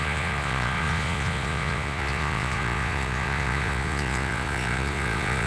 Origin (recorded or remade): remade